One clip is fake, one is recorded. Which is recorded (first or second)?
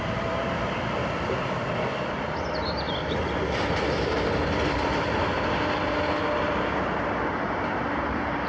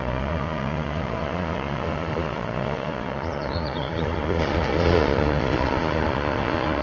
first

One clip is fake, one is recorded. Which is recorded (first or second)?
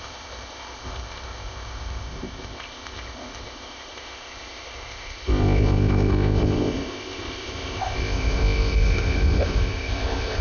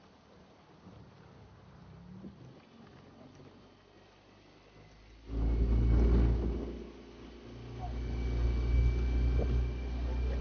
second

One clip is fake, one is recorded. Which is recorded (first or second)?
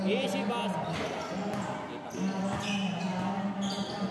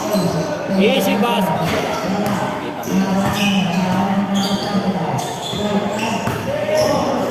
first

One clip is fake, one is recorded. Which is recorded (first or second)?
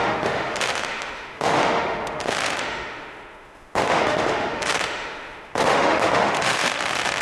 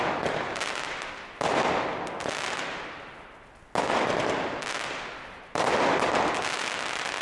second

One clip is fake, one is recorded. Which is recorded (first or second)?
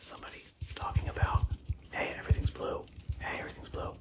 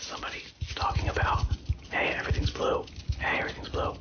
second